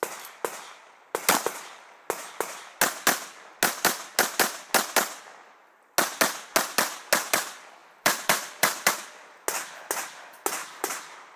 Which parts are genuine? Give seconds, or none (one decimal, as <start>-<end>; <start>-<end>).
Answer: 0.0-7.8; 8.9-10.6